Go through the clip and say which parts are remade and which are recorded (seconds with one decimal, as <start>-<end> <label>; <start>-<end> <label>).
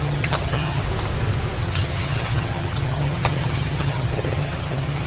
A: 0.0-0.8 remade; 0.8-1.6 recorded; 1.6-5.1 remade